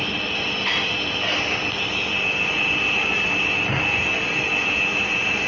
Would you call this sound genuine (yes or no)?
yes